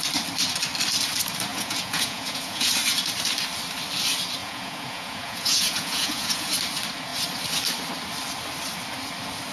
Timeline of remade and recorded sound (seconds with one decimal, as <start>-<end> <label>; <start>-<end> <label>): 0.0-1.5 recorded; 1.5-2.7 remade; 2.7-4.4 recorded; 4.4-6.5 remade; 6.5-9.5 recorded